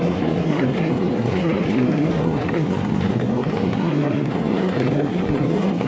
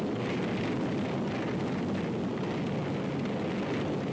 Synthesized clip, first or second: first